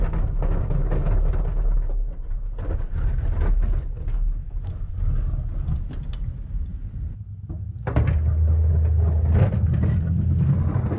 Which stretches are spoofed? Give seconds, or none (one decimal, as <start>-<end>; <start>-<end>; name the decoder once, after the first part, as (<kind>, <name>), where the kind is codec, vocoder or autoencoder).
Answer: 4.4-4.9 (autoencoder, DAC-VAE)